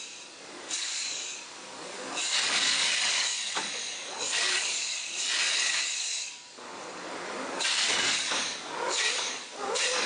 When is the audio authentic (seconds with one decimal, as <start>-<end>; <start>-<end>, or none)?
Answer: none